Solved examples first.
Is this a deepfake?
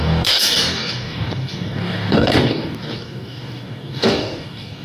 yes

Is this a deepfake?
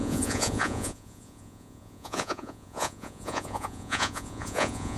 yes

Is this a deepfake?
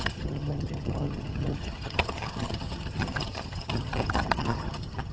yes